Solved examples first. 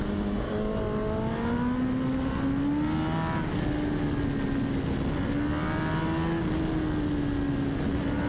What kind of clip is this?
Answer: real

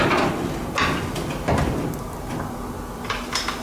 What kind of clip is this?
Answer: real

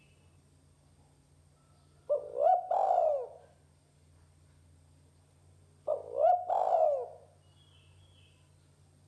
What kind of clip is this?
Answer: real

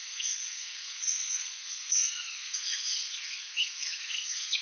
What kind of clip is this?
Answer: fake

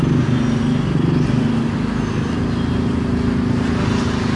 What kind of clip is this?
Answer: real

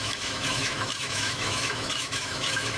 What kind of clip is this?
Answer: fake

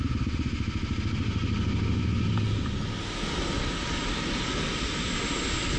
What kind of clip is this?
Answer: real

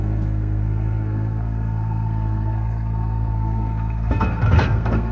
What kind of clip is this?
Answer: fake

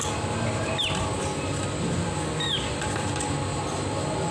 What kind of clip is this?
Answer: real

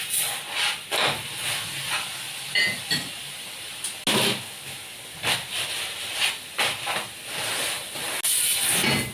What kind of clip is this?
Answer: real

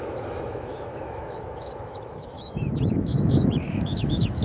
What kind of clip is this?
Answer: fake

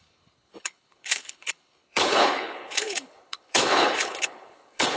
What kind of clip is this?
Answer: fake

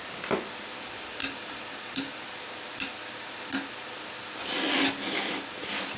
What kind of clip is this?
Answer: real